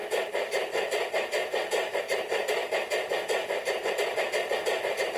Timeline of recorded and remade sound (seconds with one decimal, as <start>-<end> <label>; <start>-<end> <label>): 0.0-2.0 recorded; 2.0-2.6 remade; 2.6-3.9 recorded; 3.9-5.2 remade